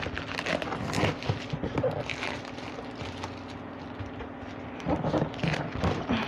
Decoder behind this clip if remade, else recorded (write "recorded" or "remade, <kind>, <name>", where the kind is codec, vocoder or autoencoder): recorded